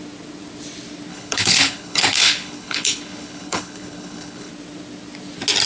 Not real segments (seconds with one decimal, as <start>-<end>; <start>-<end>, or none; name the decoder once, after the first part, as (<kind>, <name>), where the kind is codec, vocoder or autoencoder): 1.1-4.5 (codec, HILCodec)